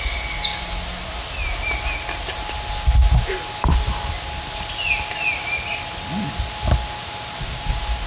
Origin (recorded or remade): recorded